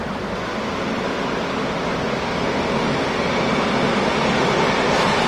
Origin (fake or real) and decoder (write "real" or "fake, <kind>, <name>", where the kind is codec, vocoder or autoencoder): real